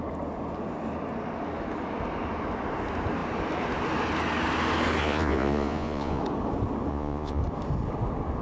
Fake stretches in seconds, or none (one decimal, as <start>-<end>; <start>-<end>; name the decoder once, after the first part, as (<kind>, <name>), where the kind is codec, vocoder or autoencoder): 5.0-6.2 (vocoder, Vocos); 6.9-7.4